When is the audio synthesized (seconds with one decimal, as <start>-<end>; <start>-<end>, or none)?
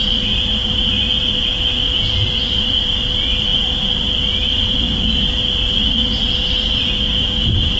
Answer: none